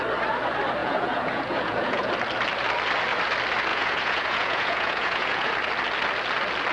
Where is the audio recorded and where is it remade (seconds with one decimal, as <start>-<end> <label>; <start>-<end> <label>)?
0.0-0.8 recorded; 0.8-2.1 remade; 2.1-3.7 recorded; 3.7-5.5 remade; 5.5-6.7 recorded